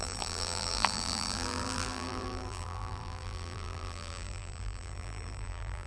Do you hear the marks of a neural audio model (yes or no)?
yes